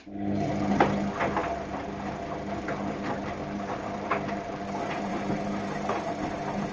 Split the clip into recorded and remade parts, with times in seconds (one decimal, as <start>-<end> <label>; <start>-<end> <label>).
0.0-1.4 recorded; 1.4-2.2 remade; 2.2-3.4 recorded; 3.4-4.6 remade; 4.6-5.1 recorded; 5.1-5.9 remade; 5.9-6.7 recorded